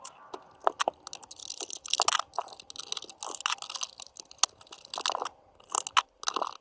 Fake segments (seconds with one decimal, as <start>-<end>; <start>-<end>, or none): none